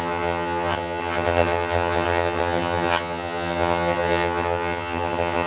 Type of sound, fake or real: fake